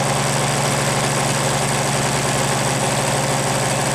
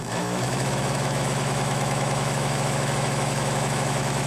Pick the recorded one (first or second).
first